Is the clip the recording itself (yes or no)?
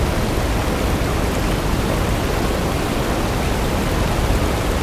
yes